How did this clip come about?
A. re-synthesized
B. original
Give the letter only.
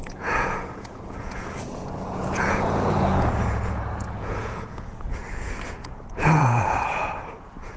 A